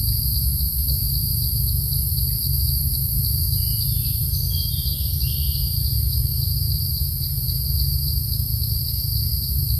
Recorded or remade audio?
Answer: recorded